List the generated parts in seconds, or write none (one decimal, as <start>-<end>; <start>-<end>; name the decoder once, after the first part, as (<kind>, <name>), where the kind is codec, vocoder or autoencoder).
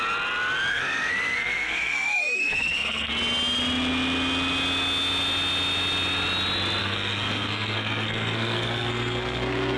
0.7-3.1 (codec, SNAC); 6.8-9.8